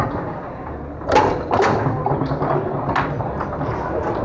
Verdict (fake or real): real